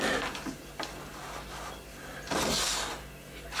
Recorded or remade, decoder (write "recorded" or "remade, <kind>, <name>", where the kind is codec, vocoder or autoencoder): recorded